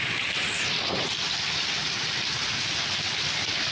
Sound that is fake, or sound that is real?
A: real